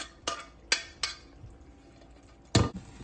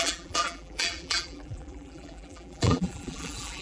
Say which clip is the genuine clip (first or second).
first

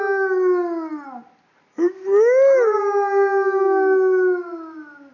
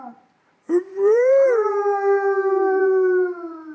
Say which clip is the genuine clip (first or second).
first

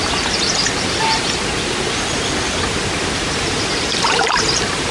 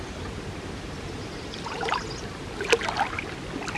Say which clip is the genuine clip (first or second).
second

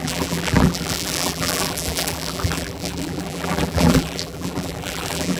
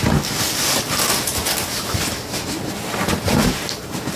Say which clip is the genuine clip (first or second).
second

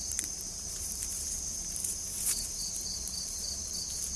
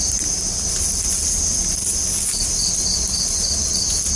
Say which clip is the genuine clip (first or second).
second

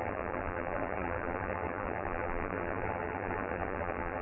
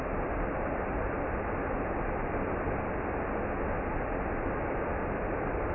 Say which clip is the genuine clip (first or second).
second